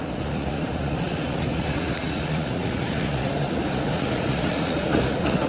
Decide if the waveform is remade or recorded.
remade